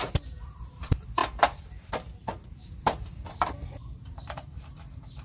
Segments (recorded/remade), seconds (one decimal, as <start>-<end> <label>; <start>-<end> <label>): 0.0-1.2 remade; 1.2-2.8 recorded; 2.8-5.2 remade